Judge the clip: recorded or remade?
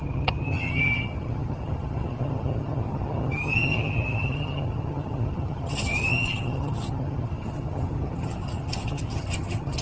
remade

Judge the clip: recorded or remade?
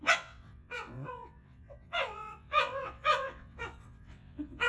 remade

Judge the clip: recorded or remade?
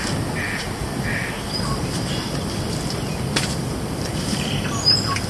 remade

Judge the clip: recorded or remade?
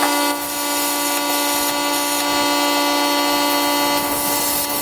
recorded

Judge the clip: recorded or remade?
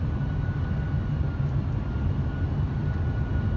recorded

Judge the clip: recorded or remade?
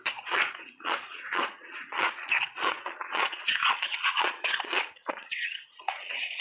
remade